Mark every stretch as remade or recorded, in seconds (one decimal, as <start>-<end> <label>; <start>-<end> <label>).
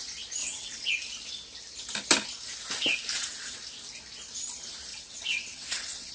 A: 0.0-0.4 recorded; 0.4-0.9 remade; 0.9-3.1 recorded; 3.1-3.6 remade; 3.6-4.9 recorded; 4.9-6.1 remade